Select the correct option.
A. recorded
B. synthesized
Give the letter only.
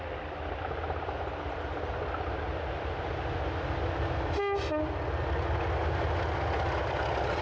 A